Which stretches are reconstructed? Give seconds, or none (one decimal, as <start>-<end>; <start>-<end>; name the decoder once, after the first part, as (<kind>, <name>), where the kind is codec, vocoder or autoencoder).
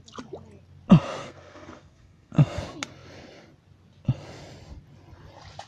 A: 1.2-2.6 (codec, SNAC)